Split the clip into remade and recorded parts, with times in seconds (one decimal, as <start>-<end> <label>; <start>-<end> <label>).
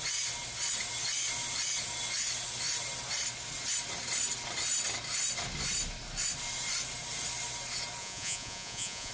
0.0-8.0 recorded; 8.0-9.1 remade